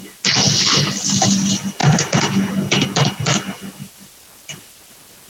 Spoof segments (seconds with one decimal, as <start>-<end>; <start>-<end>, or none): none